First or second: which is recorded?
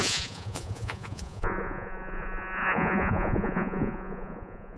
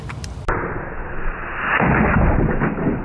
second